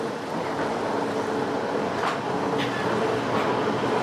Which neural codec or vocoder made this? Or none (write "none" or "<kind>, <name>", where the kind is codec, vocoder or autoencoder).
none